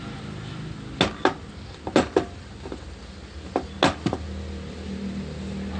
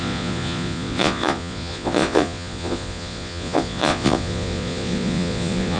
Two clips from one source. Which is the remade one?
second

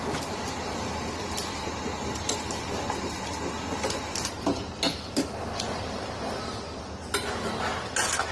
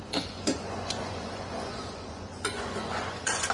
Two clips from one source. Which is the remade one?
second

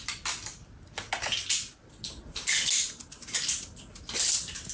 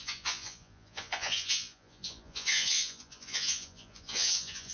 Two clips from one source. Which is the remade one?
second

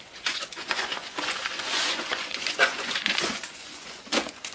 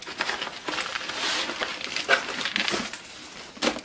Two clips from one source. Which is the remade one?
first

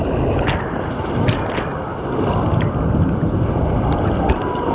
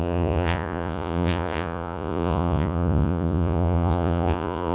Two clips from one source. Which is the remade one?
second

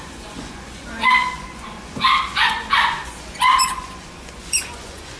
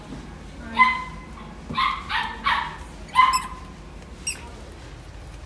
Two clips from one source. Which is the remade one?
first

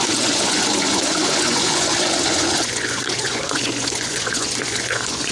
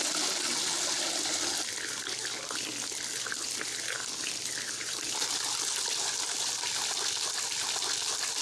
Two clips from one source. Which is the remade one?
first